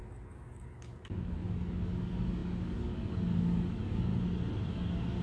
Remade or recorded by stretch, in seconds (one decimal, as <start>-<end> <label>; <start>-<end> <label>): 0.0-4.1 remade; 4.1-4.7 recorded; 4.7-5.2 remade